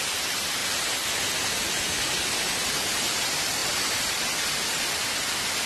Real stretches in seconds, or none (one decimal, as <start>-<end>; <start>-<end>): 0.0-3.6; 4.2-5.7